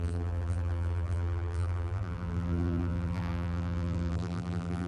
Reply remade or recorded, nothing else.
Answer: remade